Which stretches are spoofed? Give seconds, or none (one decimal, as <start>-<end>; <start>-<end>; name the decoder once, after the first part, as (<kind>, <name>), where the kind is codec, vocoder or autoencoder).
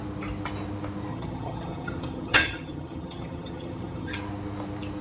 1.1-4.1 (vocoder, HiFi-GAN)